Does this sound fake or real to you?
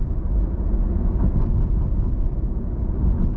fake